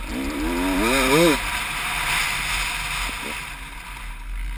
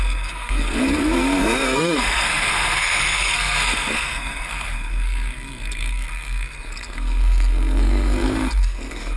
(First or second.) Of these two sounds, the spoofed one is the second